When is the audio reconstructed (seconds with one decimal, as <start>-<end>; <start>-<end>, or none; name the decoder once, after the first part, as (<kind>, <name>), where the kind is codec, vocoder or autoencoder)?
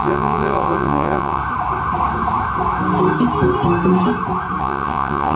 0.0-1.4 (vocoder, WaveNeXt); 4.6-5.4